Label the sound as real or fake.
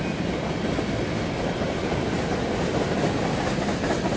real